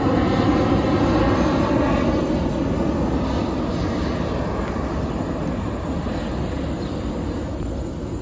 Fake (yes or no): no